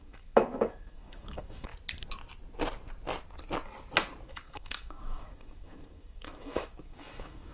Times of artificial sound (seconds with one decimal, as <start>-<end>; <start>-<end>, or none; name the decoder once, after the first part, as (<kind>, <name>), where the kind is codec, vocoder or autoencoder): 0.0-1.7 (autoencoder, DAC-VAE); 4.3-7.5